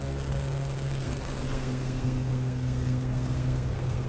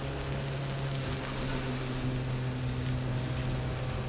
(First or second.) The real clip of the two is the second